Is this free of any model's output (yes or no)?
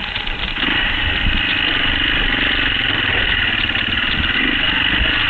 yes